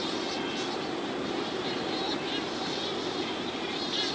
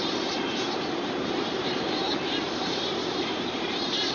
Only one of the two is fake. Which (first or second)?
second